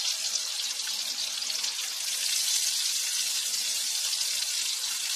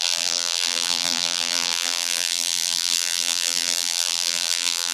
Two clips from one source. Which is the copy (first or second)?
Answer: second